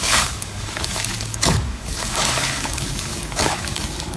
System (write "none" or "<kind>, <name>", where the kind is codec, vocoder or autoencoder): codec, DAC